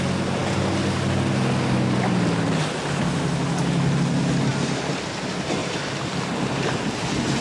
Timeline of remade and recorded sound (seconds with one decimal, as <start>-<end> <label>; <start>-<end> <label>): 0.0-7.4 recorded